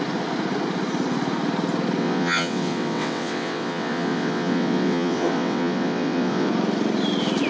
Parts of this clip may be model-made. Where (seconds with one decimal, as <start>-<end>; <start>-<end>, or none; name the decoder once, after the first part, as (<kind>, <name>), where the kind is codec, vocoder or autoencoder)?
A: 2.0-6.5 (vocoder, WaveNeXt)